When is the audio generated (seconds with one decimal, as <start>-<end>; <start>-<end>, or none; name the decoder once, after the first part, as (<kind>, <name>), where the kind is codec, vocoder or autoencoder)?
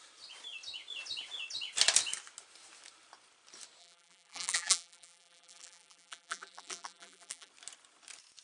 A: 3.8-7.5 (vocoder, BigVGAN v2)